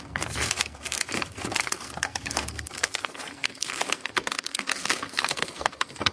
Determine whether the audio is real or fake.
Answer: fake